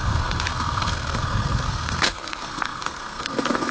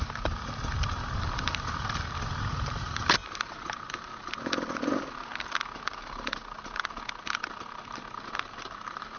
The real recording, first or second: second